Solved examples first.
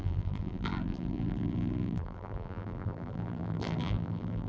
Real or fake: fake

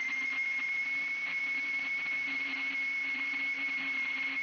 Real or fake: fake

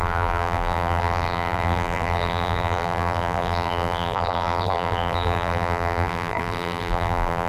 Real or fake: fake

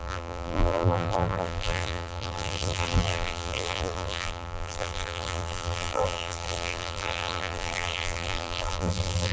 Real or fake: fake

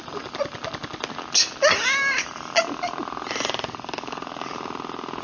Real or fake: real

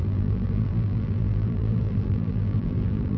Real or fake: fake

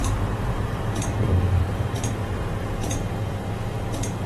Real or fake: fake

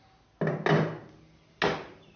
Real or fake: real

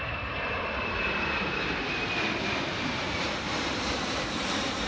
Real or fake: fake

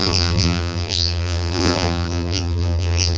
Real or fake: fake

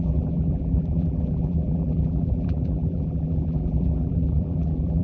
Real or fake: fake